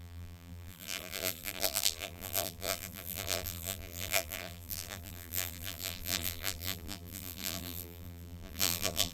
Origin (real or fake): fake